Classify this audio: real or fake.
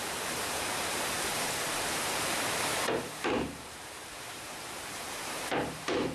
fake